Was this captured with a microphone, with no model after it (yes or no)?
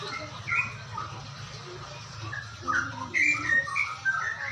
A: yes